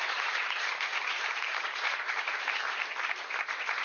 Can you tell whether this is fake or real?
fake